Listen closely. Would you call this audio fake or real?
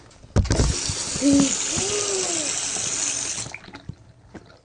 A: real